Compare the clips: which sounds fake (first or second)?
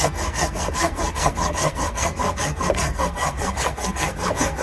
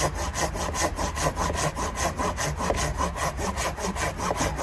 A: first